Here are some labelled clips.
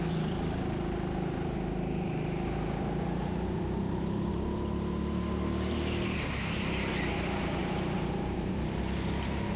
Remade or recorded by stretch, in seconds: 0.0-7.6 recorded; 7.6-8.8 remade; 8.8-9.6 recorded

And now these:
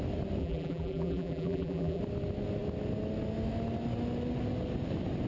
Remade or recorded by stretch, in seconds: 0.0-0.4 recorded; 0.4-2.0 remade; 2.0-5.3 recorded

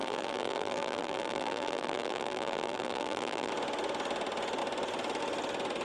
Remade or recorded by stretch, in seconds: 0.0-3.5 remade; 3.5-5.8 recorded